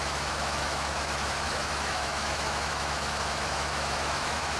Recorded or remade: remade